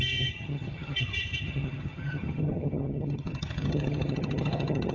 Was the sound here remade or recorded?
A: remade